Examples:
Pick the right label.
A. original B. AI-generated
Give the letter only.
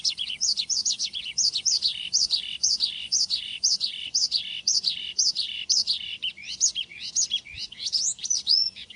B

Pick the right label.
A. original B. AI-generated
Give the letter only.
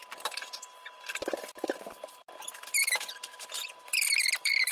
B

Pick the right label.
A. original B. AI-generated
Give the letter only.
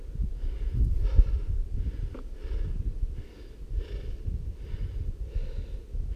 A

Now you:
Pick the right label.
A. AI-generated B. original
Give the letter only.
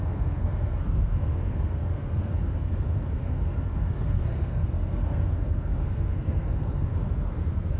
A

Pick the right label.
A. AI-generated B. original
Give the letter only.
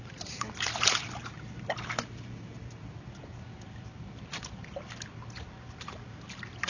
B